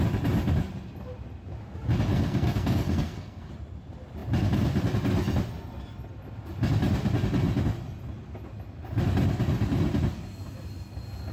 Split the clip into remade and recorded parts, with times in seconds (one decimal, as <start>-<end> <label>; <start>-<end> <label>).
0.0-2.1 recorded; 2.1-3.5 remade; 3.5-11.3 recorded